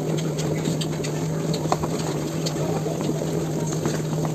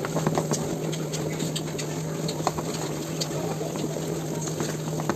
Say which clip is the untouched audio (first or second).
second